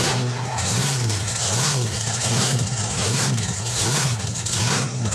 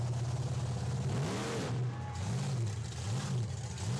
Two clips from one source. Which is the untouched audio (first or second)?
second